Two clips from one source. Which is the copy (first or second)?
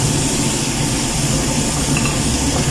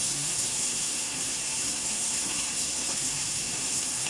second